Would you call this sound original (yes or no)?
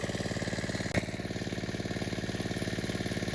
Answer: yes